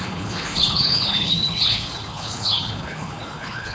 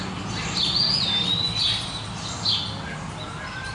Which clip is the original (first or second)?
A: second